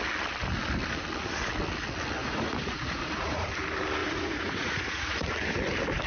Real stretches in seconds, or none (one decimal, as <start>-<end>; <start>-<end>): 0.0-2.2; 3.5-4.0; 5.3-6.1